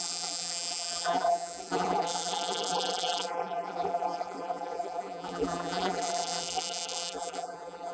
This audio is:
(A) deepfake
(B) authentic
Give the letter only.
A